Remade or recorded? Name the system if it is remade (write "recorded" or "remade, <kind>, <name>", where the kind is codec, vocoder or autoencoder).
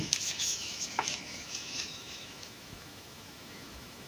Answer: remade, autoencoder, DAC-VAE